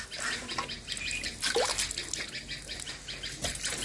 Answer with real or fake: real